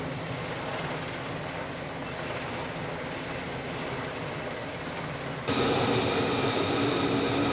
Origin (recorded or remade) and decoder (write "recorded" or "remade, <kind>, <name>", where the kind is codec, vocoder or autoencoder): recorded